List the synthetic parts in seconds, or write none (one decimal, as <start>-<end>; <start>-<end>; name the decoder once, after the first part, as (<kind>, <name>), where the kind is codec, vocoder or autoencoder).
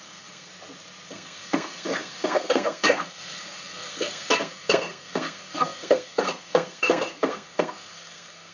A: 0.0-0.5 (codec, SNAC); 1.1-8.5